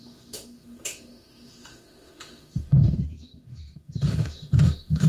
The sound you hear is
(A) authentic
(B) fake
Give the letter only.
B